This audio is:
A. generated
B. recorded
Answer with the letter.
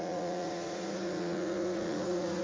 A